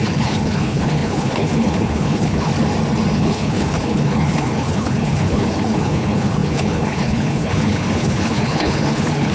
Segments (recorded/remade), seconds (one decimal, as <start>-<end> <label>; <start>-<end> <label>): 0.0-2.5 remade; 2.5-3.1 recorded; 3.1-9.3 remade